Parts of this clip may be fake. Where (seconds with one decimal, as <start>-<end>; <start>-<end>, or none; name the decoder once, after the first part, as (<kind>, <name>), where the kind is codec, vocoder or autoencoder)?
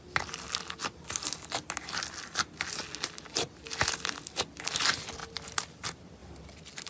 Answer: none